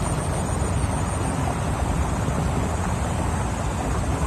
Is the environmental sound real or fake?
real